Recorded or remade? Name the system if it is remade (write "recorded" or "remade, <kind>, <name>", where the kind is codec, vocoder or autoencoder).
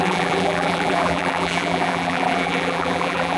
remade, vocoder, BigVGAN v2